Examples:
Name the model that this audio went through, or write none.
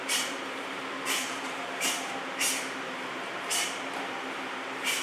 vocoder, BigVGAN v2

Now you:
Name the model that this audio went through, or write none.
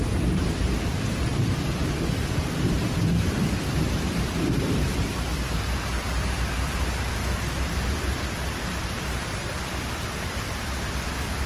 vocoder, BigVGAN v2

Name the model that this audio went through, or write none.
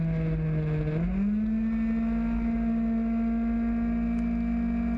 none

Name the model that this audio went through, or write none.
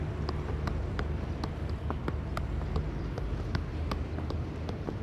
vocoder, BigVGAN v2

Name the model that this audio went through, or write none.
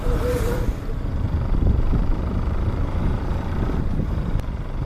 vocoder, BigVGAN v2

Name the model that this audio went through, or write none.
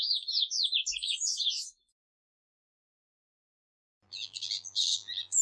vocoder, BigVGAN v2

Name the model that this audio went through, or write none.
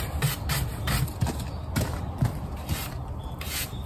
none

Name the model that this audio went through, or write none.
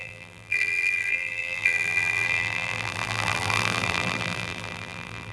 vocoder, BigVGAN v2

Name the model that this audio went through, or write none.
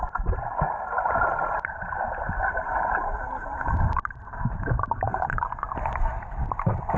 vocoder, BigVGAN v2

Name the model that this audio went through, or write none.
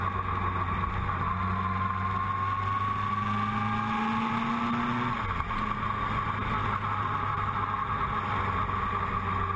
none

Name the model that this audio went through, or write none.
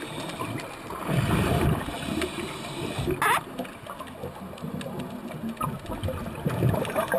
none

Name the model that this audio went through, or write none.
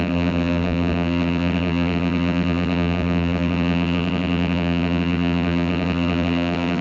vocoder, BigVGAN v2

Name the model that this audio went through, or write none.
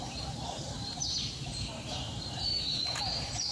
vocoder, BigVGAN v2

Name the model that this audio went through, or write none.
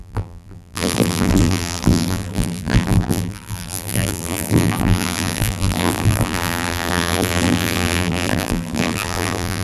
vocoder, BigVGAN v2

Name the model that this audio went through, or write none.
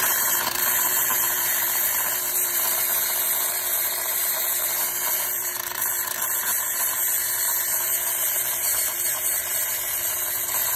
vocoder, BigVGAN v2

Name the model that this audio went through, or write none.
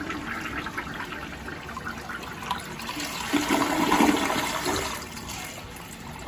none